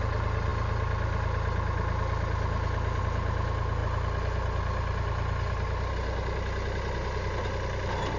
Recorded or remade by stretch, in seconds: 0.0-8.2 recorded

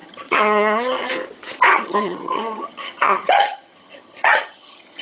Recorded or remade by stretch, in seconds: 0.0-1.1 remade; 1.1-1.7 recorded; 1.7-5.0 remade

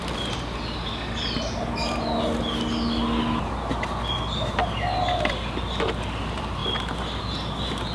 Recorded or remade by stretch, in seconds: 0.0-7.9 recorded

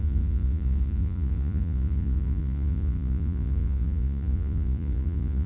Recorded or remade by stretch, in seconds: 0.0-5.5 remade

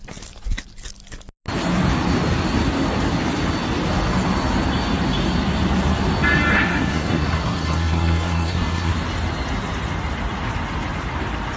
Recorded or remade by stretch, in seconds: 0.0-6.5 recorded; 6.5-8.9 remade; 8.9-11.6 recorded

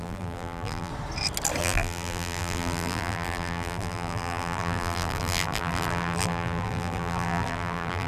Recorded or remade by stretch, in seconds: 0.0-0.9 remade; 0.9-1.6 recorded; 1.6-8.1 remade

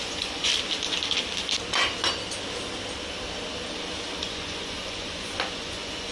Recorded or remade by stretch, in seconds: 0.0-0.5 remade; 0.5-4.2 recorded; 4.2-6.1 remade